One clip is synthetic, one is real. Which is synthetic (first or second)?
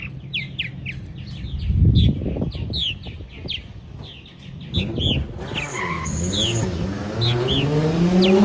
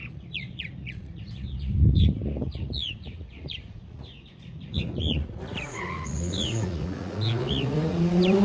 second